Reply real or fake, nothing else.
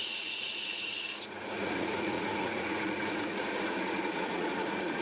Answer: fake